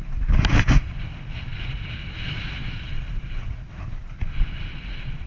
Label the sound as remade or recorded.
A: recorded